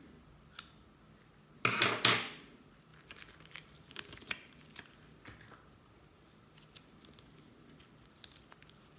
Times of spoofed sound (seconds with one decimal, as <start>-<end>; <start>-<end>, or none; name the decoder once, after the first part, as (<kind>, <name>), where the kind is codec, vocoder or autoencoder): none